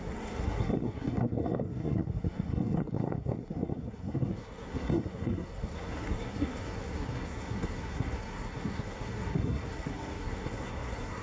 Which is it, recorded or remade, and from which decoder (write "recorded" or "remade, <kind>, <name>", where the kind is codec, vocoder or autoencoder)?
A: remade, codec, SNAC